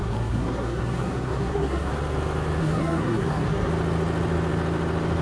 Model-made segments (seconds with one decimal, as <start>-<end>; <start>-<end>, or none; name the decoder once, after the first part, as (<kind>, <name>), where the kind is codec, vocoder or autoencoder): 0.0-1.9 (codec, SNAC); 2.6-3.7